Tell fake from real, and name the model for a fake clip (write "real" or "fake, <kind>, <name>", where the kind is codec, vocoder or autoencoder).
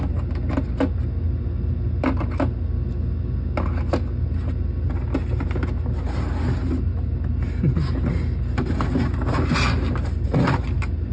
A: real